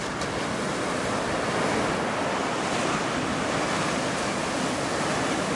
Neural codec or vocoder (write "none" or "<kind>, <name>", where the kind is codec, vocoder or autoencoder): none